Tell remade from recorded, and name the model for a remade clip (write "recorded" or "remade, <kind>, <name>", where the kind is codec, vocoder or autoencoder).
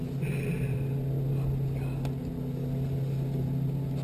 recorded